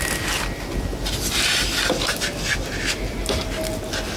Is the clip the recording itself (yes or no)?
yes